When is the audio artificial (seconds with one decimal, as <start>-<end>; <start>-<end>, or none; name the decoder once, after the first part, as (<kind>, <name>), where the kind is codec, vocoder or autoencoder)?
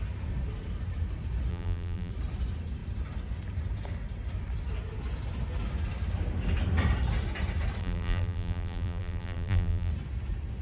1.5-2.1 (vocoder, BigVGAN v2); 7.8-9.9